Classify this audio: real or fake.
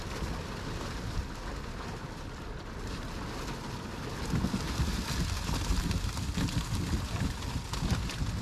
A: real